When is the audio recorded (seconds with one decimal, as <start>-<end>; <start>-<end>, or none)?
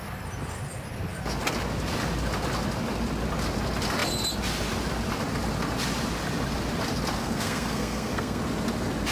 0.0-7.2; 8.4-9.1